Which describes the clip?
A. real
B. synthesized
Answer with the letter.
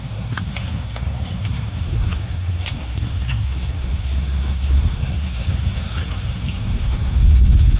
B